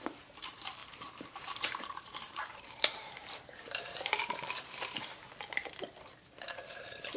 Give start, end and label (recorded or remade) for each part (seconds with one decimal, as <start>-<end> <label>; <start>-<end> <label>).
0.0-5.1 remade; 5.1-6.0 recorded; 6.0-7.2 remade